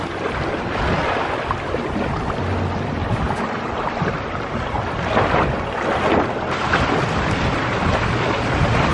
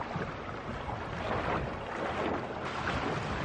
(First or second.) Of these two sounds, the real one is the second